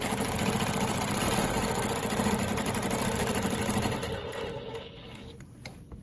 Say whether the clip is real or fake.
real